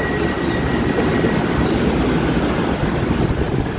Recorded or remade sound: recorded